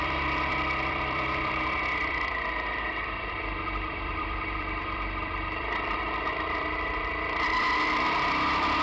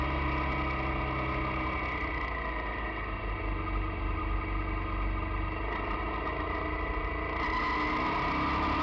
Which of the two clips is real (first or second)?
second